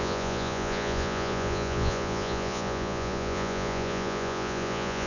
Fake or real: fake